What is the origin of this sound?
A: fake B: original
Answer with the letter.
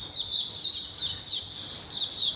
B